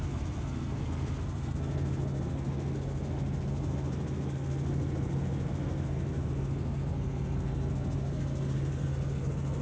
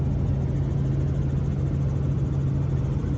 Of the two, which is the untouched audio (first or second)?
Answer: second